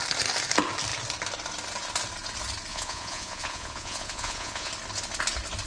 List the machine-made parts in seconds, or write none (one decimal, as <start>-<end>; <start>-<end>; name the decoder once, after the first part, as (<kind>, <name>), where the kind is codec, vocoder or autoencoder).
2.7-4.7 (vocoder, Vocos)